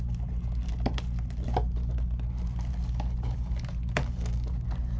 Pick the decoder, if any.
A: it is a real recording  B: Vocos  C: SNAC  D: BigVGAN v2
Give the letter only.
A